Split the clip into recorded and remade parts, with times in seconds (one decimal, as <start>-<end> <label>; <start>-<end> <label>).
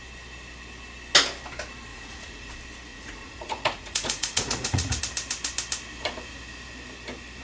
0.0-1.9 recorded; 1.9-2.5 remade; 2.5-2.9 recorded; 2.9-5.0 remade; 5.0-7.4 recorded